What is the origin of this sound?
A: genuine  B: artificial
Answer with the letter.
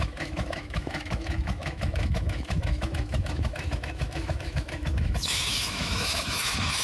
B